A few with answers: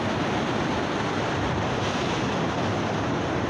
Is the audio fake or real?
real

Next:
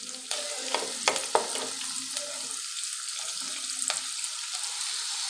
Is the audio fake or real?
real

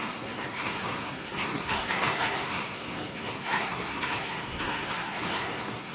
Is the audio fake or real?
fake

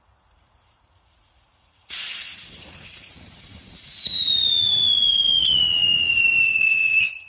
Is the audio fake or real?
fake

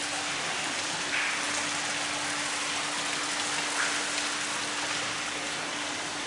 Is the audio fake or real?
real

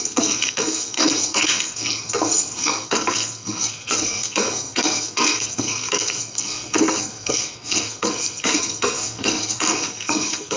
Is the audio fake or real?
fake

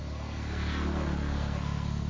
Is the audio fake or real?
fake